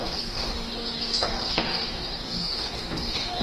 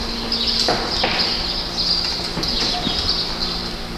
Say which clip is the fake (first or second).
first